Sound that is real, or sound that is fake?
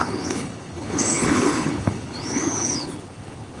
fake